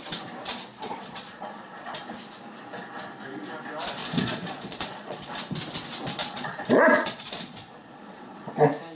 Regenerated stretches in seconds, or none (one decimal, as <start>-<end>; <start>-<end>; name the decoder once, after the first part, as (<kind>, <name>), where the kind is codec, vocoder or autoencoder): 0.7-2.0 (vocoder, Vocos); 4.0-5.3; 6.2-8.5